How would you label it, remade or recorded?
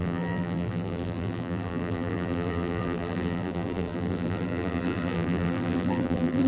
remade